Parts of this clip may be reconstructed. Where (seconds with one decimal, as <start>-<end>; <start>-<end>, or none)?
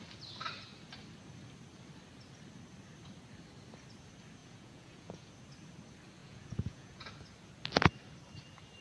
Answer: 4.4-5.3; 6.2-7.1